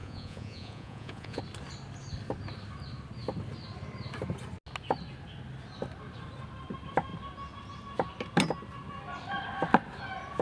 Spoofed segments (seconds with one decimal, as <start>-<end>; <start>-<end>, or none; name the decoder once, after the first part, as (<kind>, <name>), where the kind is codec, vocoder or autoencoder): 0.0-1.4 (vocoder, Vocos)